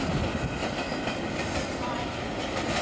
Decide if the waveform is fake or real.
real